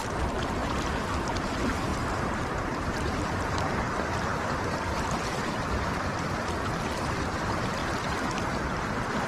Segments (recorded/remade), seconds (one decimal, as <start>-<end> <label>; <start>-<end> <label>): 0.0-7.8 remade; 7.8-8.8 recorded; 8.8-9.3 remade